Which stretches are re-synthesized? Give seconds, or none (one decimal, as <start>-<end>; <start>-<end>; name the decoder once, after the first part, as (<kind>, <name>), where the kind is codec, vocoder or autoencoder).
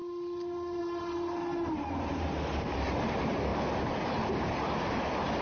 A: 0.8-3.5 (vocoder, BigVGAN v2)